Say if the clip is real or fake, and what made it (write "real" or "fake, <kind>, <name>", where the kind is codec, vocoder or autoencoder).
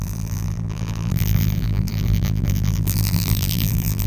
fake, vocoder, BigVGAN v2